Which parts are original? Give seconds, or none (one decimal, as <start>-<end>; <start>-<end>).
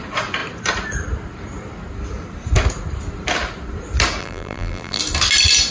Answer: 0.0-4.2; 5.0-5.7